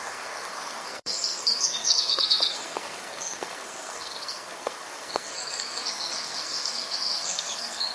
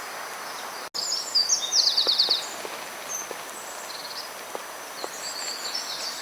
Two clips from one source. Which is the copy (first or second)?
first